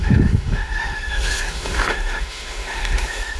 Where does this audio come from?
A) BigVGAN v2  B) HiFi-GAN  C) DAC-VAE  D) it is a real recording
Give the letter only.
C